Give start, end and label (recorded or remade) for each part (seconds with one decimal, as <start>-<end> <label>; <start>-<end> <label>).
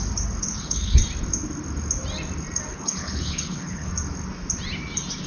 0.0-0.4 recorded; 0.4-1.0 remade; 1.0-2.7 recorded; 2.7-3.9 remade; 3.9-5.3 recorded